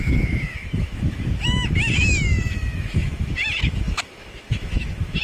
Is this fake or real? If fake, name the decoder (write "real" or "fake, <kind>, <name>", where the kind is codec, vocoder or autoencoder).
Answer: fake, autoencoder, DAC-VAE